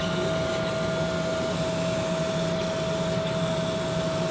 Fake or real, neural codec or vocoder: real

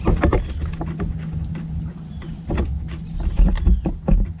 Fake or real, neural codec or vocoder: real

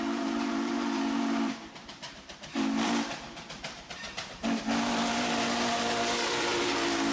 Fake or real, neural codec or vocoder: fake, vocoder, BigVGAN v2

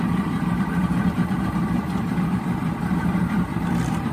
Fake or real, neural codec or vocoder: fake, vocoder, BigVGAN v2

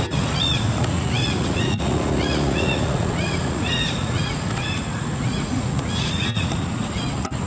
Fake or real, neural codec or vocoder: fake, vocoder, Vocos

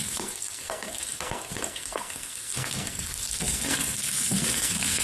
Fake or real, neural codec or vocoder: fake, codec, SNAC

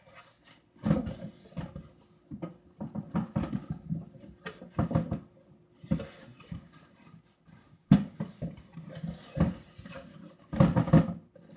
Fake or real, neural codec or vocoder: real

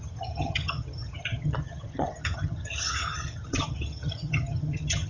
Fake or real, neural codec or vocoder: fake, vocoder, HiFi-GAN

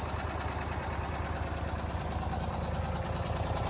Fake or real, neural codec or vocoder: real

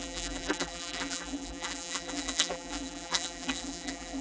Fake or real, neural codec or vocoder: fake, vocoder, BigVGAN v2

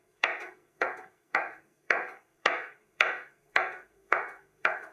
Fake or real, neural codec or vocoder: fake, codec, SNAC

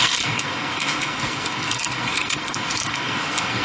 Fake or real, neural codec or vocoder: fake, codec, SNAC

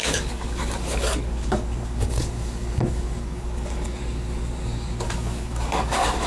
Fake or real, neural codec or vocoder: fake, codec, DAC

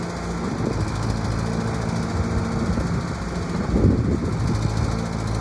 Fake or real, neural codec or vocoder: real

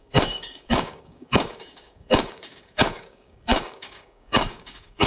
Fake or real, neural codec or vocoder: fake, codec, DAC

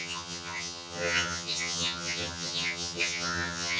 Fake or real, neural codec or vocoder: fake, vocoder, HiFi-GAN